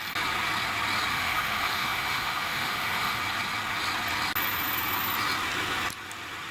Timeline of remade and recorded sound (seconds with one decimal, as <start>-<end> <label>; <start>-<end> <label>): 0.0-1.1 recorded; 1.1-3.2 remade; 3.2-6.5 recorded